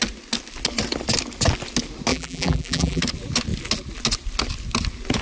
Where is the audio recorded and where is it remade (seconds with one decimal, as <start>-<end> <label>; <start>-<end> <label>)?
0.0-2.1 recorded; 2.1-3.0 remade; 3.0-5.2 recorded